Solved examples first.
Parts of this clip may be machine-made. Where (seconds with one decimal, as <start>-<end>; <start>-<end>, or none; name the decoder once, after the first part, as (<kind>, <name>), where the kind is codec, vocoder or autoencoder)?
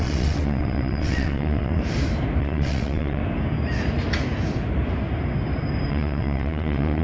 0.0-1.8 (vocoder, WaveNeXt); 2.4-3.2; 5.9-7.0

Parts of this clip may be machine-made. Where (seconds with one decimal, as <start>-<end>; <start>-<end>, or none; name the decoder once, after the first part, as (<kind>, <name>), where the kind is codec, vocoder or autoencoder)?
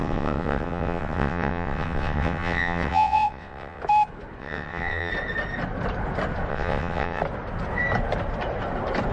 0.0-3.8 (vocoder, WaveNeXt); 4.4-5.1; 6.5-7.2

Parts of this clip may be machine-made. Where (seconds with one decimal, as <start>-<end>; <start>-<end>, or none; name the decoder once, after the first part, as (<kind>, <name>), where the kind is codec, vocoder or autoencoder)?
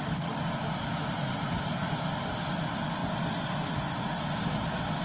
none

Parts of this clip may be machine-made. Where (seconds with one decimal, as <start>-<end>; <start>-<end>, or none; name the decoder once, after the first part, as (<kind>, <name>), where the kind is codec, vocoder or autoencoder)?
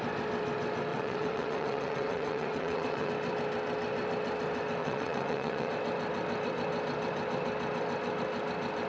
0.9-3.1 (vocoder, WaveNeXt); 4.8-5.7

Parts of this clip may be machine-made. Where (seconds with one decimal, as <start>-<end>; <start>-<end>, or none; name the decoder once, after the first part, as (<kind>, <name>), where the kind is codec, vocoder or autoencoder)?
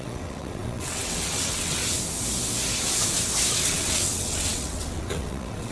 0.0-1.8 (vocoder, WaveNeXt); 3.7-5.7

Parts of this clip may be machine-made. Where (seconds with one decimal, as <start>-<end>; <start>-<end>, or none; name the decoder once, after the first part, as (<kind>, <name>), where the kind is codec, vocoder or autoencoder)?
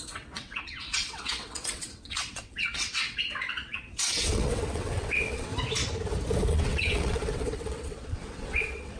0.0-5.5 (vocoder, WaveNeXt); 6.5-9.0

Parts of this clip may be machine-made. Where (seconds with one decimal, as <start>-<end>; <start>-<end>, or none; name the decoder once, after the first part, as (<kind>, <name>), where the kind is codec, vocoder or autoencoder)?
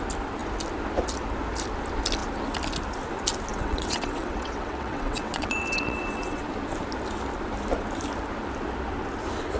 3.5-6.4 (vocoder, WaveNeXt)